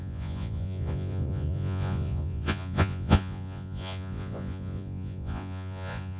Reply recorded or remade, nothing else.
remade